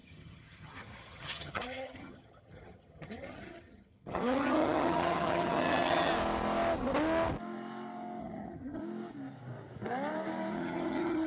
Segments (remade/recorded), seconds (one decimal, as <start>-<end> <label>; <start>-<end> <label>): 0.0-6.1 remade; 6.1-8.2 recorded; 8.2-8.8 remade; 8.8-10.5 recorded; 10.5-11.3 remade